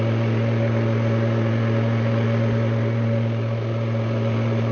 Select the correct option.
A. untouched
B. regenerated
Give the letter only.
A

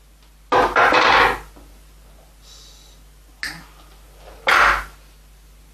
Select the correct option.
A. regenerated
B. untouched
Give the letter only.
B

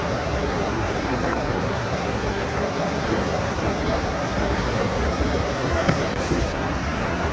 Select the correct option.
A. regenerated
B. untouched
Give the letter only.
A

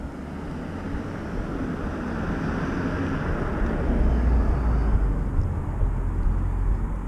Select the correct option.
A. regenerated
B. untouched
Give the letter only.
B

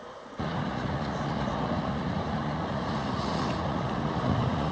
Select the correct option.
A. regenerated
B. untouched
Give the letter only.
A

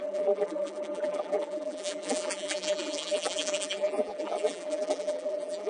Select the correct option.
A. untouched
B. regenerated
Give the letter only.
B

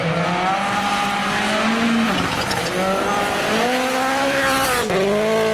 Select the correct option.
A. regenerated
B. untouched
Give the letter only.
B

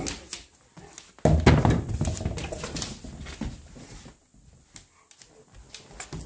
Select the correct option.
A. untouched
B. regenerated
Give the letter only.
A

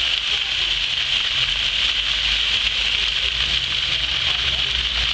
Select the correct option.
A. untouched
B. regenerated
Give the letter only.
A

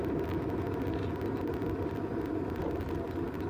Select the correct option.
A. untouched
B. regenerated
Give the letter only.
A